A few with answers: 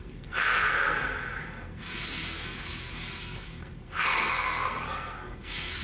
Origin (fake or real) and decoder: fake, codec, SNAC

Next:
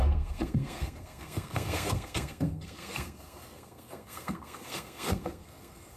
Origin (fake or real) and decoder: fake, codec, SNAC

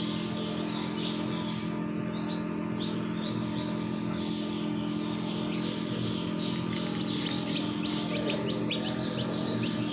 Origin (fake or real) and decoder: real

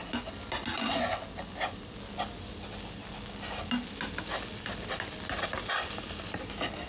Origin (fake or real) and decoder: real